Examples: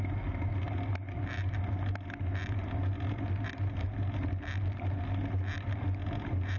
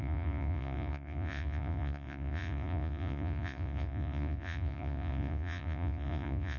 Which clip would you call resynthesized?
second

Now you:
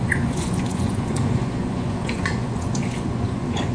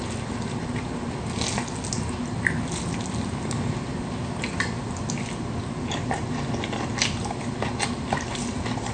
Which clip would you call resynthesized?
first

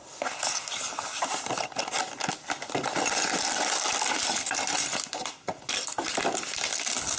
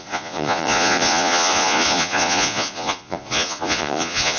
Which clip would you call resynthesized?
second